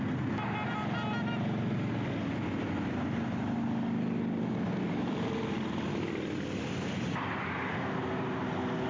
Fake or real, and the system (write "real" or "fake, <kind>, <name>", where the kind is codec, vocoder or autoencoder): real